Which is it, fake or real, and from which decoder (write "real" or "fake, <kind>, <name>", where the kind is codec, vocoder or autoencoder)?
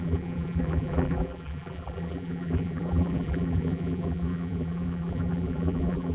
fake, vocoder, BigVGAN v2